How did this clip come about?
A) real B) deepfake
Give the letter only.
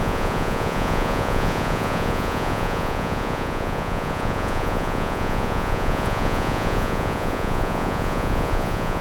B